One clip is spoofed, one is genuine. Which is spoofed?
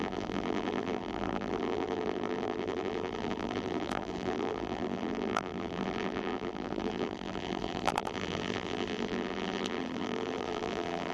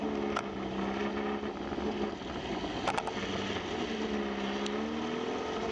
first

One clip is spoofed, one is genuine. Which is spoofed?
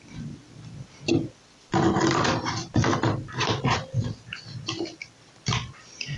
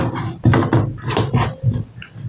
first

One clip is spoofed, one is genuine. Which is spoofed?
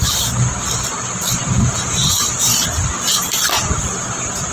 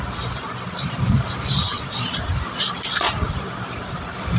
second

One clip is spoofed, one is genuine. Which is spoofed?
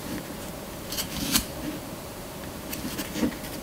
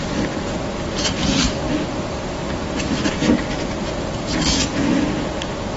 first